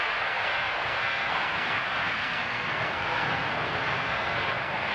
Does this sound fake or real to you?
fake